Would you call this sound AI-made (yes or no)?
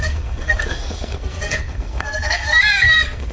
yes